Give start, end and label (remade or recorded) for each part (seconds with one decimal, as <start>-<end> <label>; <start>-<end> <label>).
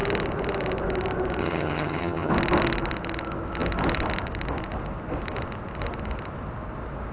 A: 0.0-1.4 recorded; 1.4-2.3 remade; 2.3-7.1 recorded